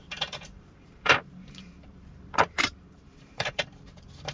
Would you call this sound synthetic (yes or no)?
yes